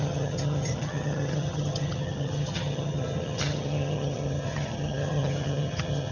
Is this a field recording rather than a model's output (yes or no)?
no